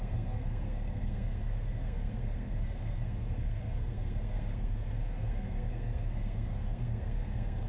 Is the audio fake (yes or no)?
yes